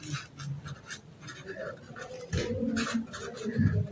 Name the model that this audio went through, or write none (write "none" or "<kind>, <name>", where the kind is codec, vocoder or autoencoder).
none